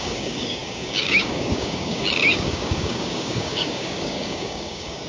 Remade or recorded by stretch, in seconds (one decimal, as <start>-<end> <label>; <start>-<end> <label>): 0.0-5.1 remade